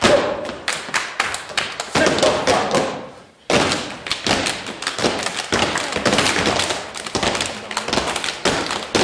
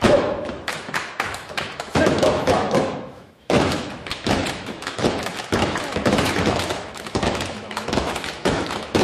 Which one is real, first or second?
first